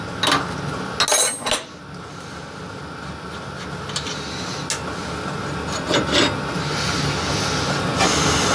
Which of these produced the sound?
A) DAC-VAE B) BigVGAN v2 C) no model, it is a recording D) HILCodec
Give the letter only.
C